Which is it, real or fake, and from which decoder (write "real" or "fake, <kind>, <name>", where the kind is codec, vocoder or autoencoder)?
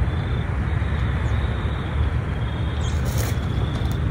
real